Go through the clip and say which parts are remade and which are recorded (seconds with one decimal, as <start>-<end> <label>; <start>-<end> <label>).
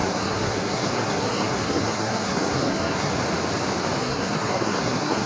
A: 0.0-3.1 remade; 3.1-4.0 recorded; 4.0-5.3 remade